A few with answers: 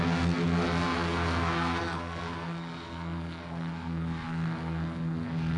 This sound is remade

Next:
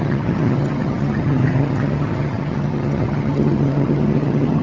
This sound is remade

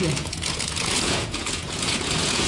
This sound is remade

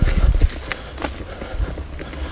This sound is recorded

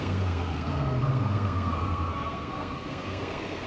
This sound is remade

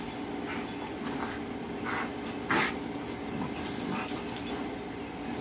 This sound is remade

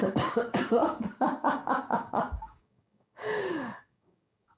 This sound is remade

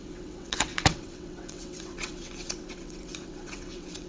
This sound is remade